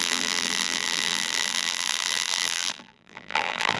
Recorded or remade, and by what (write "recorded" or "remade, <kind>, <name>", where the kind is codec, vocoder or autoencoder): remade, vocoder, BigVGAN v2